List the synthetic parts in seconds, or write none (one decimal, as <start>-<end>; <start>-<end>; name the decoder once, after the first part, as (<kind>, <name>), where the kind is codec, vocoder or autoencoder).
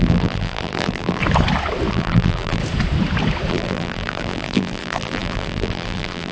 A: 0.0-1.2 (vocoder, BigVGAN v2); 1.9-2.6; 3.5-6.3